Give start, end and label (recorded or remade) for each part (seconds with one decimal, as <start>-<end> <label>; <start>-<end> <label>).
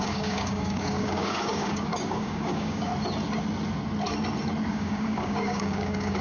0.0-2.9 remade; 2.9-4.7 recorded; 4.7-6.2 remade